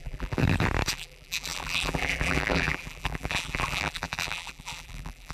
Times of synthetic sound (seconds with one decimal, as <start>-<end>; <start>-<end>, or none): 0.0-0.4; 0.9-5.3